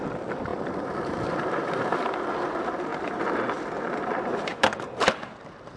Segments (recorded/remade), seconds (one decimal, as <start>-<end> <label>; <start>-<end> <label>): 0.0-0.5 remade; 0.5-1.3 recorded; 1.3-5.8 remade